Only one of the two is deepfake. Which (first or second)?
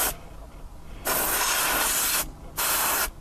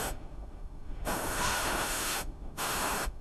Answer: second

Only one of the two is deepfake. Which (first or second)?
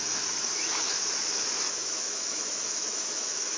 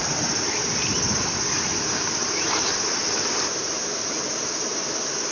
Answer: first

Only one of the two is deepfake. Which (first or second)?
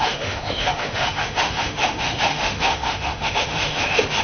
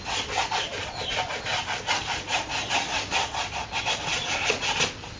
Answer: first